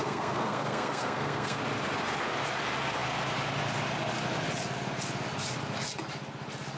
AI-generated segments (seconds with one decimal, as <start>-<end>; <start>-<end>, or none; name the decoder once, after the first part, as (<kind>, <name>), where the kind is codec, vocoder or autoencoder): 0.0-1.6 (codec, SNAC)